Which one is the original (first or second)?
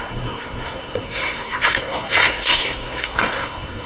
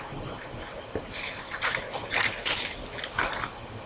second